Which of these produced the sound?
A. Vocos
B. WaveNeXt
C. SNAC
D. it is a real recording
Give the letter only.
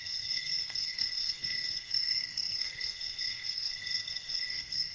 C